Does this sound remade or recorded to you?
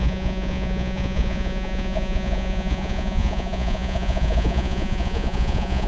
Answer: remade